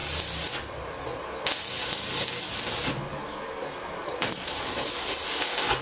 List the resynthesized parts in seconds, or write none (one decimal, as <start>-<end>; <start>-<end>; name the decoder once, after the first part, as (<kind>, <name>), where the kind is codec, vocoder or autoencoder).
4.0-4.8 (vocoder, Vocos)